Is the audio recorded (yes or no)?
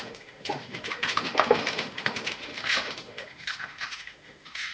no